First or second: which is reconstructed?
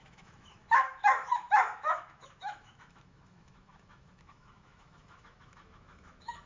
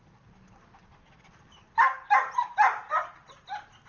first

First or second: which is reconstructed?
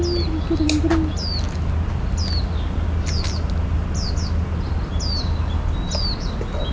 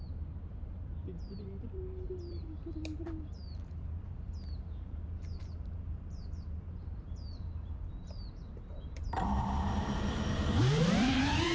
second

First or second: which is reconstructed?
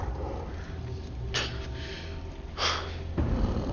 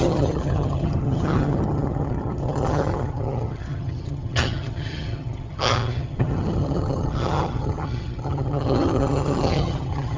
second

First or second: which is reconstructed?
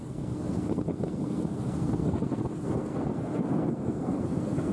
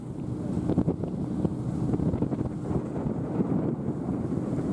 first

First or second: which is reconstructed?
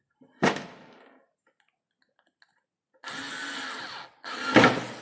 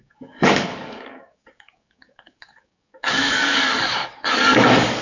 second